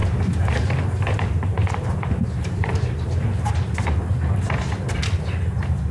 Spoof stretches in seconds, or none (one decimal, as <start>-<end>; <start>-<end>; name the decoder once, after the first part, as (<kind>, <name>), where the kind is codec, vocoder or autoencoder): 0.0-3.5 (vocoder, BigVGAN v2)